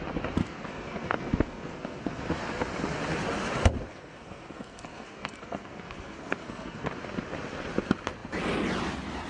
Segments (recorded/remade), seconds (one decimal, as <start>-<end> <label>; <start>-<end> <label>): 0.0-0.4 recorded; 0.4-2.2 remade; 2.2-3.9 recorded; 3.9-6.9 remade; 6.9-9.3 recorded